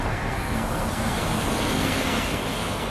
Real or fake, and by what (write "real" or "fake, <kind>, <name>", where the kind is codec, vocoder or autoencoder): fake, codec, SNAC